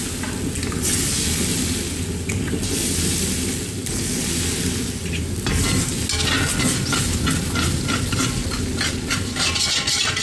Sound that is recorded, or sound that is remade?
recorded